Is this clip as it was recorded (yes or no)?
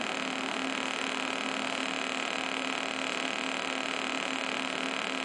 yes